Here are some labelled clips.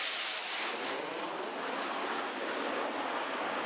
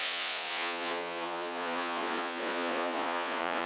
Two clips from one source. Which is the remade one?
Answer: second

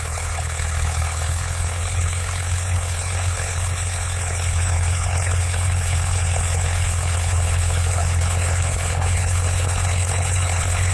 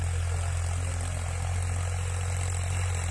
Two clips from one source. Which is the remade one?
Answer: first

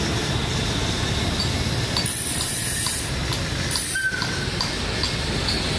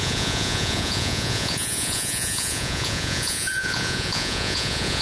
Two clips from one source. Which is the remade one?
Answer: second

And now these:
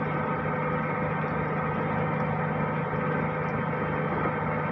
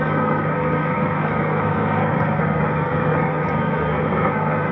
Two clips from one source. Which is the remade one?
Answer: second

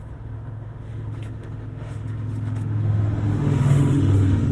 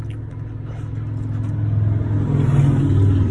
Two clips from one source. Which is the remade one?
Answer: first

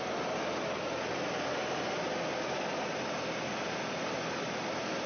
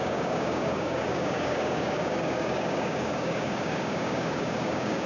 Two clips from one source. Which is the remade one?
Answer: second